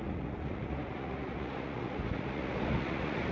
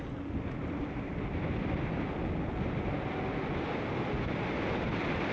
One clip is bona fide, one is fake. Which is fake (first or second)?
first